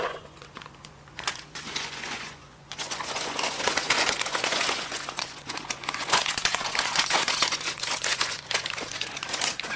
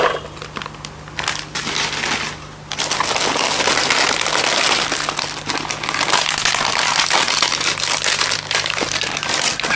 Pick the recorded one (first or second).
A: second